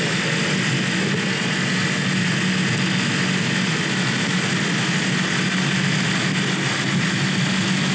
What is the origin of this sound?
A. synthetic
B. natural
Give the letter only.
B